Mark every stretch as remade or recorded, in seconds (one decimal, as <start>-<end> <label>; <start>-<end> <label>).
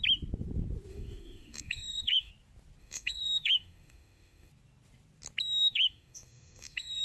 0.0-0.9 recorded; 0.9-2.3 remade; 2.3-2.8 recorded; 2.8-4.5 remade; 4.5-5.6 recorded; 5.6-7.0 remade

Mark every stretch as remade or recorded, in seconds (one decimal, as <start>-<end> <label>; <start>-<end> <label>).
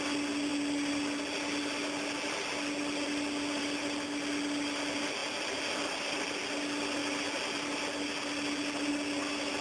0.0-9.6 recorded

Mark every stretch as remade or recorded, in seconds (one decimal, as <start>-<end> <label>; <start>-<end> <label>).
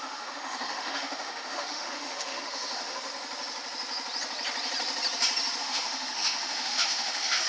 0.0-3.1 remade; 3.1-5.6 recorded; 5.6-7.5 remade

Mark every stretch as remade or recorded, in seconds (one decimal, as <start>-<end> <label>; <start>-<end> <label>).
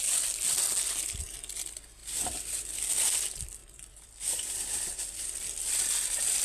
0.0-3.6 recorded; 3.6-5.7 remade; 5.7-6.4 recorded